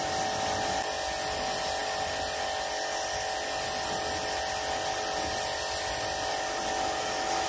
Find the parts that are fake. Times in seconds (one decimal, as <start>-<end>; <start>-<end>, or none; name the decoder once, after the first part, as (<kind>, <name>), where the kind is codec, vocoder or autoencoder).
none